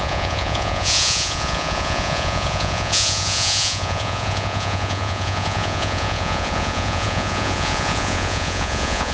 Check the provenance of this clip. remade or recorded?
remade